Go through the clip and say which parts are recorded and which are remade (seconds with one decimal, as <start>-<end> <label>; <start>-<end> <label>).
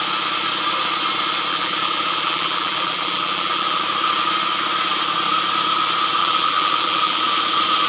0.0-1.5 recorded; 1.5-3.8 remade; 3.8-6.2 recorded; 6.2-7.2 remade; 7.2-7.9 recorded